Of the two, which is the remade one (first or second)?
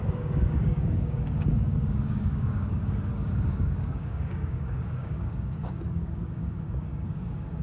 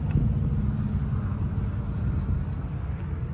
first